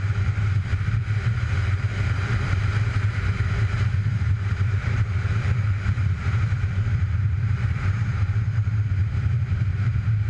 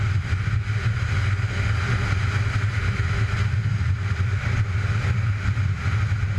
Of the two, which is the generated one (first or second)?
first